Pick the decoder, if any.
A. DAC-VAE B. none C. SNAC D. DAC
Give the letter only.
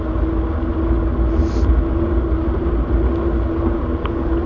B